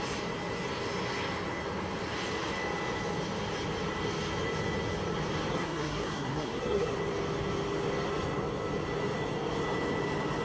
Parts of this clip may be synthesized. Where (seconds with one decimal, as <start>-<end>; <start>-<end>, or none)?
5.5-6.9